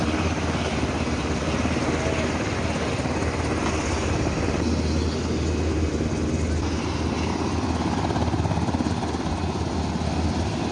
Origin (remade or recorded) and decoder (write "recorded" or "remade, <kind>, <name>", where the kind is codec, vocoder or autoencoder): recorded